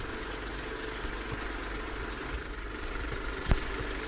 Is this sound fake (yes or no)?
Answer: no